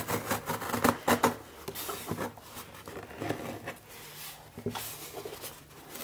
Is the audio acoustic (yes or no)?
yes